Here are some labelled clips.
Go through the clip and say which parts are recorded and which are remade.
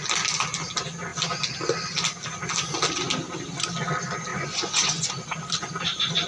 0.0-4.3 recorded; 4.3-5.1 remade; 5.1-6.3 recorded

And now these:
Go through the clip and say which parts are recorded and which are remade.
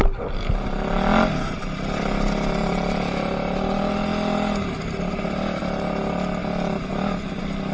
0.0-7.7 recorded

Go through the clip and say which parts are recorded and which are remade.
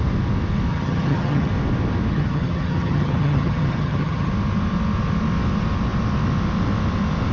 0.0-0.7 recorded; 0.7-1.5 remade; 1.5-2.1 recorded; 2.1-4.3 remade; 4.3-7.3 recorded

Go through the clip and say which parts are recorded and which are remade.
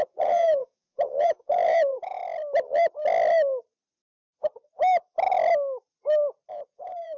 0.0-2.2 remade; 2.2-6.5 recorded; 6.5-7.2 remade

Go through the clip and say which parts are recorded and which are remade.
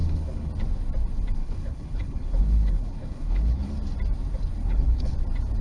0.0-0.5 remade; 0.5-1.4 recorded; 1.4-3.7 remade; 3.7-4.6 recorded; 4.6-5.1 remade; 5.1-5.6 recorded